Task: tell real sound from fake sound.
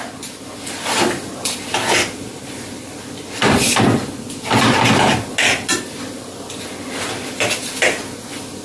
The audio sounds real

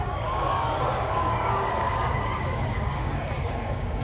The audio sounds fake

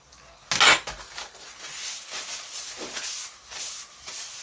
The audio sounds real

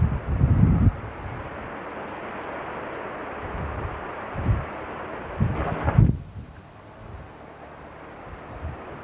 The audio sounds real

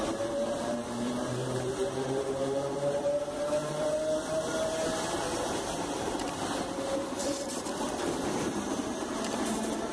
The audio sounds fake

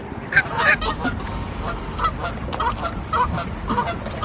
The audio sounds fake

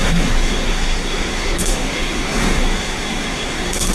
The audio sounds fake